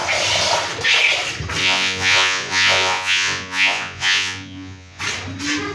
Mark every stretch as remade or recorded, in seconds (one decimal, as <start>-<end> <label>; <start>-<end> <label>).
0.0-1.6 recorded; 1.6-5.0 remade; 5.0-5.7 recorded